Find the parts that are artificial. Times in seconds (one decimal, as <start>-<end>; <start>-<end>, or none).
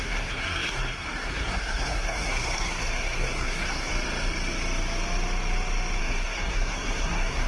0.0-3.9; 6.0-7.5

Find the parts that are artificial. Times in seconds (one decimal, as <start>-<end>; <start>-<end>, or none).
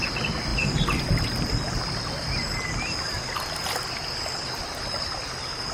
none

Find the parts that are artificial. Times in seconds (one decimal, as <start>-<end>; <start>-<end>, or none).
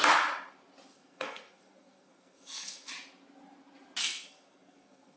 0.9-2.9; 4.0-5.2